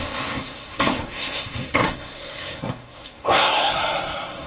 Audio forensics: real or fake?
fake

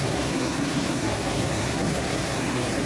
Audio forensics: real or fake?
fake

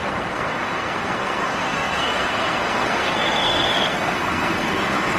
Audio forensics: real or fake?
fake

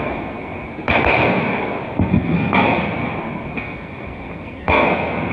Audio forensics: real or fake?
fake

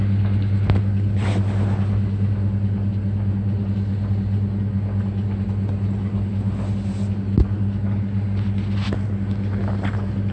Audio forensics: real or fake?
real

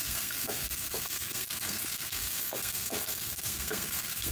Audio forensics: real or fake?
fake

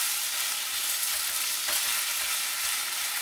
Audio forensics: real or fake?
real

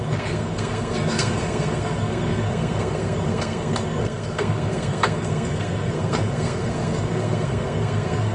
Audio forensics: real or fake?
fake